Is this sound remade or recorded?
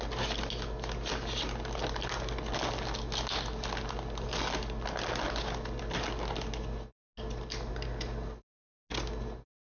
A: recorded